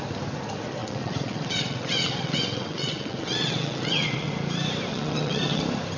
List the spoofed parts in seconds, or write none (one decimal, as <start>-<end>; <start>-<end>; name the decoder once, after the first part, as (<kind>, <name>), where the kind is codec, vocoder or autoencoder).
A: 0.8-4.3 (vocoder, WaveNeXt); 4.9-5.6